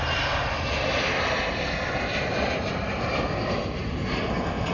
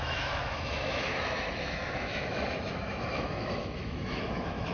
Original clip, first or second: first